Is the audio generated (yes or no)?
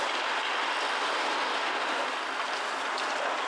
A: no